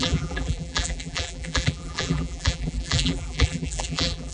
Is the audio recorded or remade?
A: remade